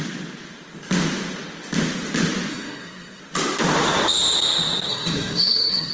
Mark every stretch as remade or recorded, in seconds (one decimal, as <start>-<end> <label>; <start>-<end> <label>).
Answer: 0.0-2.5 recorded; 2.5-3.2 remade; 3.2-4.9 recorded; 4.9-5.9 remade